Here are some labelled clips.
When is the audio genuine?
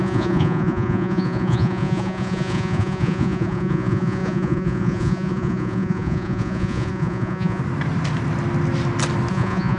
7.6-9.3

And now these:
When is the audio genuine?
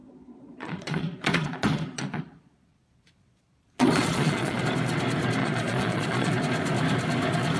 4.6-5.4; 6.3-7.6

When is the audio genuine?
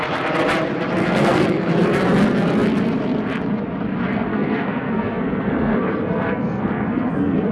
0.0-1.0; 1.7-4.3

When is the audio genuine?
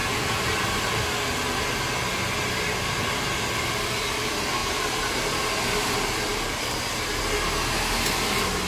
0.0-4.6; 5.5-6.3; 7.2-8.7